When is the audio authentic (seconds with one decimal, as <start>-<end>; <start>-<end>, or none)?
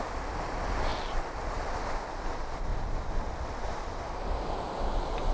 0.0-0.9; 1.4-5.3